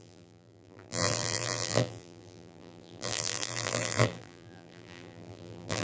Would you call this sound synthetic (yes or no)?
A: yes